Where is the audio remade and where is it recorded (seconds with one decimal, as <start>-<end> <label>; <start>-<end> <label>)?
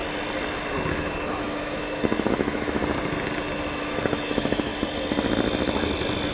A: 0.0-0.9 recorded; 0.9-2.8 remade; 2.8-3.8 recorded; 3.8-4.7 remade; 4.7-6.3 recorded